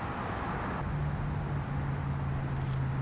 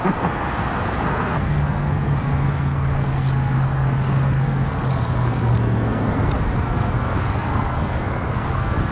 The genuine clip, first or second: first